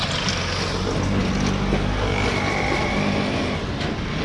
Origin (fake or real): real